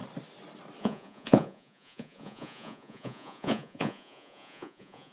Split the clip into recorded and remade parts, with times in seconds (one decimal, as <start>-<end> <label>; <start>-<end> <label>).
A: 0.0-0.8 recorded; 0.8-5.1 remade

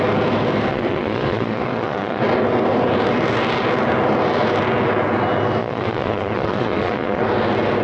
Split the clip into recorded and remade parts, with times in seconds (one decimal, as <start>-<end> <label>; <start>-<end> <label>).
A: 0.0-0.7 recorded; 0.7-2.2 remade; 2.2-5.6 recorded; 5.6-7.2 remade; 7.2-7.8 recorded

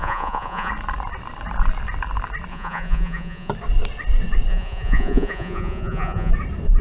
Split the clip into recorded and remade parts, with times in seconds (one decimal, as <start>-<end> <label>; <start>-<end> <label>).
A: 0.0-0.7 remade; 0.7-2.5 recorded; 2.5-3.5 remade; 3.5-4.5 recorded; 4.5-6.3 remade; 6.3-6.8 recorded

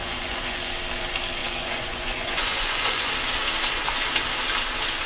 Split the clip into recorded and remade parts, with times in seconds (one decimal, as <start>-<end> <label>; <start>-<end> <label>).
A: 0.0-0.7 remade; 0.7-1.4 recorded; 1.4-3.1 remade; 3.1-5.1 recorded

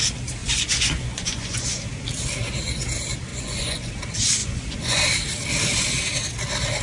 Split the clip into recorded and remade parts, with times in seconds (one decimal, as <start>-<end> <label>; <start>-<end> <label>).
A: 0.0-0.4 recorded; 0.4-1.8 remade; 1.8-3.3 recorded; 3.3-3.9 remade; 3.9-4.4 recorded; 4.4-5.0 remade; 5.0-6.8 recorded

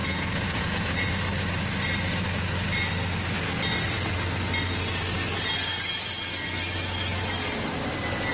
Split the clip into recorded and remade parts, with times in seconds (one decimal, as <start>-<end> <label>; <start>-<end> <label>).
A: 0.0-1.1 remade; 1.1-8.3 recorded

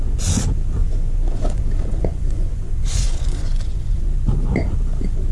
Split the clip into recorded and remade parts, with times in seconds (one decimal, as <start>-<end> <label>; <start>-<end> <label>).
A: 0.0-0.8 recorded; 0.8-4.0 remade; 4.0-5.3 recorded

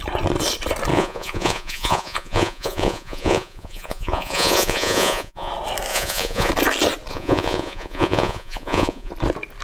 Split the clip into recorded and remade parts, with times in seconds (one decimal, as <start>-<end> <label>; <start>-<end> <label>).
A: 0.0-0.9 recorded; 0.9-5.5 remade; 5.5-5.9 recorded; 5.9-6.5 remade; 6.5-7.1 recorded; 7.1-9.1 remade; 9.1-9.6 recorded